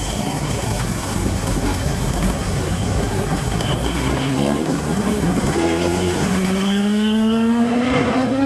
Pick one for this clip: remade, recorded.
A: remade